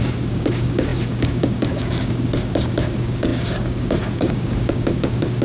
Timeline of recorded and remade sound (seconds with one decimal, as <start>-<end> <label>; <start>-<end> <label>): 0.0-5.4 remade